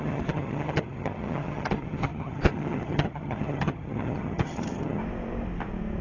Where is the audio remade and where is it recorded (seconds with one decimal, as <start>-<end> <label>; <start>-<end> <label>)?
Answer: 0.0-5.0 remade; 5.0-6.0 recorded